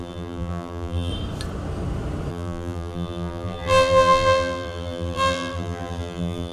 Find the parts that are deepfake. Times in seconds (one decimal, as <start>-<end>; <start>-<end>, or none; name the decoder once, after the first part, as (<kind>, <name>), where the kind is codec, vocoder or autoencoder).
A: 0.0-1.1 (vocoder, BigVGAN v2); 2.3-6.5

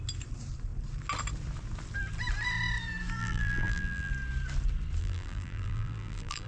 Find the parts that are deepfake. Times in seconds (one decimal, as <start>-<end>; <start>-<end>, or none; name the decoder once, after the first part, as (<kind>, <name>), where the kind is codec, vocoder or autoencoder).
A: 3.2-4.1 (vocoder, BigVGAN v2); 5.0-6.5

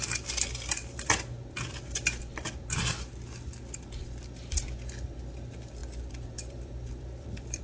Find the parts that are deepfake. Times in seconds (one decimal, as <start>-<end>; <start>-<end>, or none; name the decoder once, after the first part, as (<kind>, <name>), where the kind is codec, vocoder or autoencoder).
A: 5.8-7.6 (vocoder, BigVGAN v2)

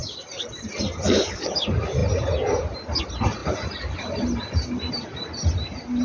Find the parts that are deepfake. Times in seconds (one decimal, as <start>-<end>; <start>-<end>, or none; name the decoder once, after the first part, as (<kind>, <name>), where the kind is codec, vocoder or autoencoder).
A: 0.0-0.7 (vocoder, BigVGAN v2)

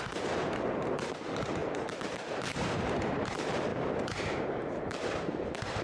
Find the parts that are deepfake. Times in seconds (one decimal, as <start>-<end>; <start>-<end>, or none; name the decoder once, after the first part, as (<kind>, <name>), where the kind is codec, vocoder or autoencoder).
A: 0.0-3.7 (vocoder, BigVGAN v2); 4.8-5.8